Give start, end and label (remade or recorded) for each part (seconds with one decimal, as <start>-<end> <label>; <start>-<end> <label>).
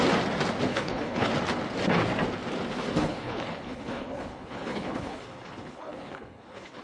0.0-0.7 recorded; 0.7-1.3 remade; 1.3-2.9 recorded; 2.9-6.8 remade